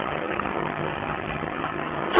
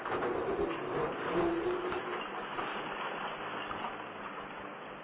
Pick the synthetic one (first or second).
first